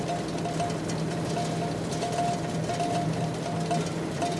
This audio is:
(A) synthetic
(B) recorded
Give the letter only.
B